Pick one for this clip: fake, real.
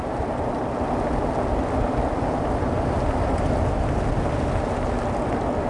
real